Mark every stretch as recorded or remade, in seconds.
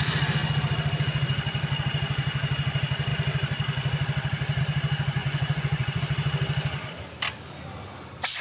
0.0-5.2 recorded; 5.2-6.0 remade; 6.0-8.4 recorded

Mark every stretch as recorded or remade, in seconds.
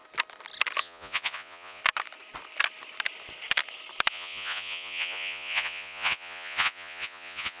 0.0-0.8 recorded; 0.8-1.8 remade; 1.8-4.1 recorded; 4.1-7.6 remade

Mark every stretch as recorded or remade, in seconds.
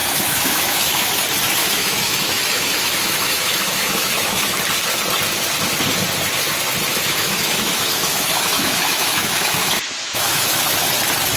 0.0-1.1 remade; 1.1-1.6 recorded; 1.6-4.6 remade; 4.6-6.9 recorded; 6.9-10.8 remade; 10.8-11.4 recorded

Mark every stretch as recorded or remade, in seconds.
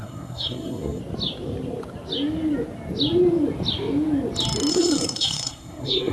0.0-1.0 remade; 1.0-4.7 recorded; 4.7-6.1 remade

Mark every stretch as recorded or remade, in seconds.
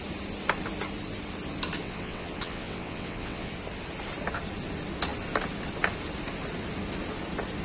0.0-1.8 recorded; 1.8-3.5 remade; 3.5-7.6 recorded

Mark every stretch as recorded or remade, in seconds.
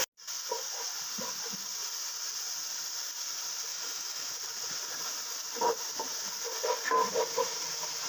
0.0-3.7 recorded; 3.7-4.3 remade; 4.3-8.1 recorded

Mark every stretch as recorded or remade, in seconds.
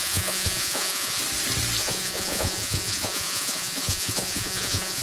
0.0-1.2 remade; 1.2-1.8 recorded; 1.8-5.0 remade